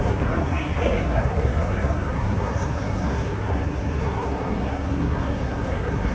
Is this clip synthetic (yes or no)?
yes